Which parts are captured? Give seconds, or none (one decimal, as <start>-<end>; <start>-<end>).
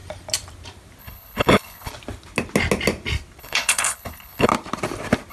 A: 0.0-1.0; 1.9-3.4; 4.5-5.3